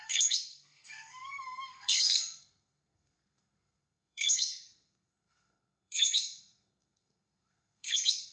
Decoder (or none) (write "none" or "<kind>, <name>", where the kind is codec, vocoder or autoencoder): codec, SNAC